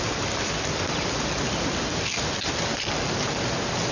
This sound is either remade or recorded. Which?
recorded